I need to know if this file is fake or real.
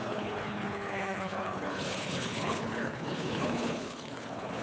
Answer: fake